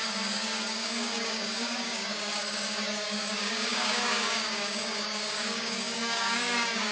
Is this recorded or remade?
remade